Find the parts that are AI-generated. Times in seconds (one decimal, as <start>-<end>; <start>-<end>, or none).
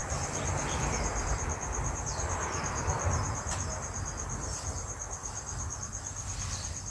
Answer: 0.0-6.9